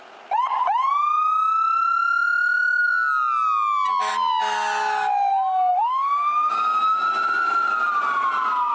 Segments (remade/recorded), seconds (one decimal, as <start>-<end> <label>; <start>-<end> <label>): 0.0-5.7 recorded; 5.7-6.5 remade; 6.5-8.7 recorded